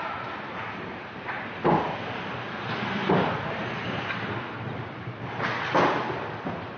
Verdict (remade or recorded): recorded